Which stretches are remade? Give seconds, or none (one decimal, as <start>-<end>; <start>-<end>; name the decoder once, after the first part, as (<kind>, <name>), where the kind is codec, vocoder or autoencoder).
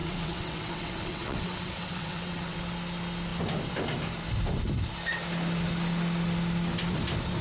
0.0-2.6 (vocoder, WaveNeXt)